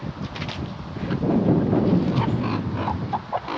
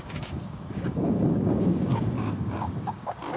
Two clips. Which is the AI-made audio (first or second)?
second